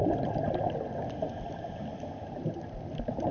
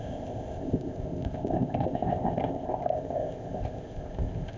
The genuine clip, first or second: first